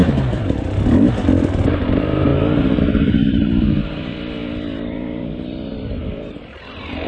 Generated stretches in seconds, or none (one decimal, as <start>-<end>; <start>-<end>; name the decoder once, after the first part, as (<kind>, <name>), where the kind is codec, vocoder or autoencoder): 0.0-2.3 (vocoder, BigVGAN v2); 2.8-7.1